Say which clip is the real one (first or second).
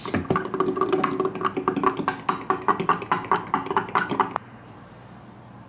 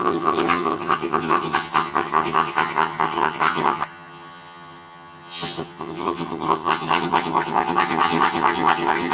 first